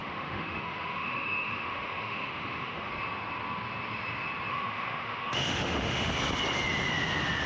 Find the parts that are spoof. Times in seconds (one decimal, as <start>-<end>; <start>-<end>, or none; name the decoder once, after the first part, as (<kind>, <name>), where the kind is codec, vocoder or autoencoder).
0.0-2.9 (autoencoder, DAC-VAE); 4.5-6.1